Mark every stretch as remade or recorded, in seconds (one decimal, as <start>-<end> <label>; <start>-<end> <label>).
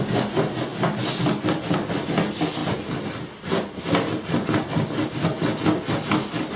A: 0.0-6.6 recorded